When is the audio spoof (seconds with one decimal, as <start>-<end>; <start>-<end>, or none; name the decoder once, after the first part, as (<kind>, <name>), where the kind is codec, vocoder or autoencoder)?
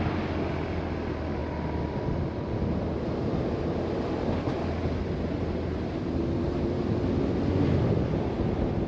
none